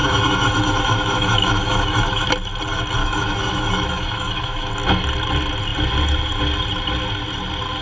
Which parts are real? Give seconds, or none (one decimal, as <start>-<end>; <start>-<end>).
2.3-3.0; 4.7-7.8